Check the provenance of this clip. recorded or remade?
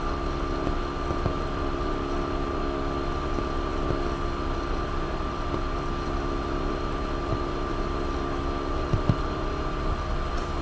recorded